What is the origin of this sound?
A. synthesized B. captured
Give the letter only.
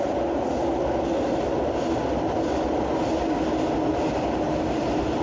B